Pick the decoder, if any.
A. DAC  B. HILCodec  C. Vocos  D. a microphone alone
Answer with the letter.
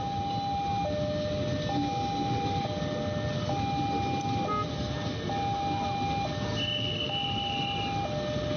D